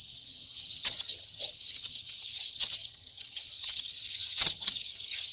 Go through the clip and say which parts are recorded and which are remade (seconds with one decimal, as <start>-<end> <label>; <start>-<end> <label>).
0.0-5.3 remade